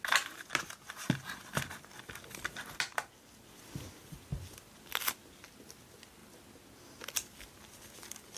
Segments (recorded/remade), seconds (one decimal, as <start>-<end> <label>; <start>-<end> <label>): 0.0-8.4 recorded